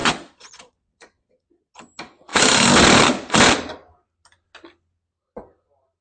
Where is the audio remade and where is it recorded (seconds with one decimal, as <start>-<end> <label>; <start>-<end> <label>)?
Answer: 0.0-1.6 remade; 1.6-6.0 recorded